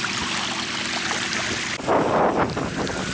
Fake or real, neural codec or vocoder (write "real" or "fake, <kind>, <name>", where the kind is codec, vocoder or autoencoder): real